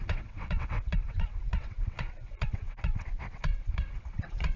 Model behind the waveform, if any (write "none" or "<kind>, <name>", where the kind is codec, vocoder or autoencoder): vocoder, WaveNeXt